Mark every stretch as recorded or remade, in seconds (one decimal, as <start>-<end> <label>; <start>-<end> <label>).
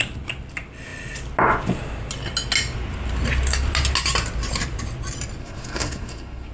0.0-5.4 recorded; 5.4-6.5 remade